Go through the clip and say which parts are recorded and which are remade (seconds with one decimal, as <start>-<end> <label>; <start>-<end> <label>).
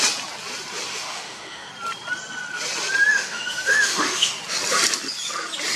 0.0-0.9 recorded; 0.9-1.7 remade; 1.7-3.1 recorded; 3.1-4.3 remade; 4.3-5.8 recorded